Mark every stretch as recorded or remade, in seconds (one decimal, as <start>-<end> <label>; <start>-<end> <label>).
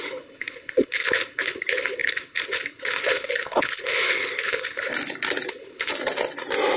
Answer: 0.0-4.9 remade; 4.9-5.5 recorded; 5.5-5.9 remade; 5.9-6.8 recorded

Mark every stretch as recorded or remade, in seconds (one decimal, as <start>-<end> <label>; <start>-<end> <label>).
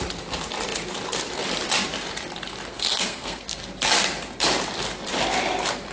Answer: 0.0-2.7 recorded; 2.7-3.6 remade; 3.6-5.9 recorded